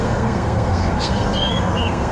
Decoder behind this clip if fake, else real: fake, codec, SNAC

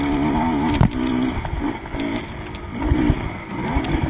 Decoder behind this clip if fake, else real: real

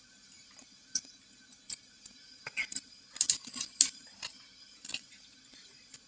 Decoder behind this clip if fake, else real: real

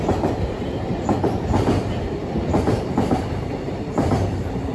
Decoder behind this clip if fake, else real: fake, vocoder, BigVGAN v2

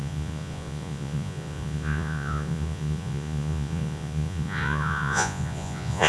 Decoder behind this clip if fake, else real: fake, vocoder, Vocos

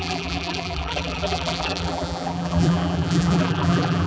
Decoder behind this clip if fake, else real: fake, vocoder, BigVGAN v2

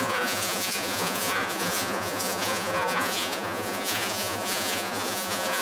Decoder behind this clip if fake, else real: fake, vocoder, Vocos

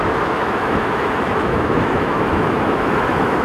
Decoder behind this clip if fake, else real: fake, autoencoder, DAC-VAE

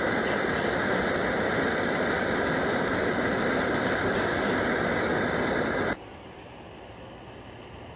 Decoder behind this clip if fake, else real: real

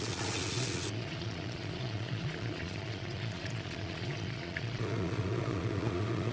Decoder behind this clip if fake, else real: fake, vocoder, Vocos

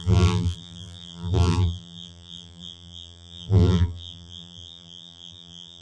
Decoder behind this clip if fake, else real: fake, vocoder, BigVGAN v2